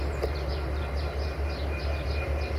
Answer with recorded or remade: recorded